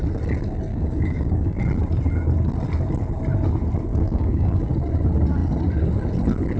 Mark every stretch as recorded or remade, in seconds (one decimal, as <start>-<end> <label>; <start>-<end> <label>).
0.0-0.7 recorded; 0.7-1.6 remade; 1.6-3.9 recorded; 3.9-4.7 remade; 4.7-6.6 recorded

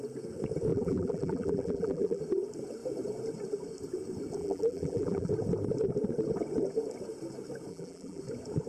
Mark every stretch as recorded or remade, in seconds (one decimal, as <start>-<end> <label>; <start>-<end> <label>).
0.0-0.7 recorded; 0.7-2.2 remade; 2.2-4.4 recorded; 4.4-5.3 remade; 5.3-7.7 recorded; 7.7-8.2 remade; 8.2-8.7 recorded

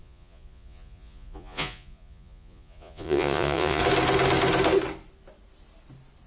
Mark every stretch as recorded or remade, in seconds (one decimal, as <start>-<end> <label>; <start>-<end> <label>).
0.0-3.8 remade; 3.8-6.3 recorded

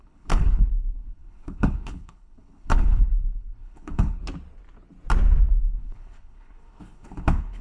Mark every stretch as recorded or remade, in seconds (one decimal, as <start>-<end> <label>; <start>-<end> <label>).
0.0-4.2 remade; 4.2-5.6 recorded; 5.6-7.6 remade

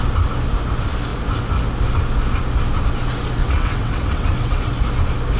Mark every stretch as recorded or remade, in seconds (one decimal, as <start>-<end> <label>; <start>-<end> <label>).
0.0-3.4 recorded; 3.4-4.7 remade; 4.7-5.4 recorded

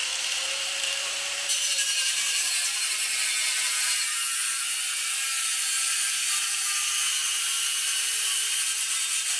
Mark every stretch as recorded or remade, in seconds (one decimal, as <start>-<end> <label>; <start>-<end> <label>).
0.0-2.5 remade; 2.5-9.4 recorded

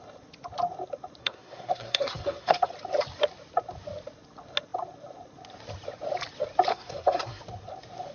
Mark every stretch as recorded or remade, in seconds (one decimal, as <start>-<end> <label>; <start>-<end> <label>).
0.0-1.2 recorded; 1.2-2.7 remade; 2.7-6.7 recorded; 6.7-7.4 remade; 7.4-8.1 recorded